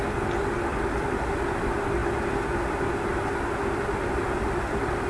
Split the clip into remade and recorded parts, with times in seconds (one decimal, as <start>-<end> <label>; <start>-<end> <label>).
0.0-0.7 recorded; 0.7-1.2 remade; 1.2-5.1 recorded